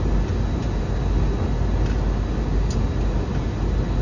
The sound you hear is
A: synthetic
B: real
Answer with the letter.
B